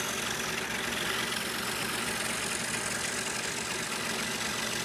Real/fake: real